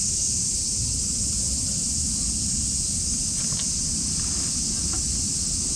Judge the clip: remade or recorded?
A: recorded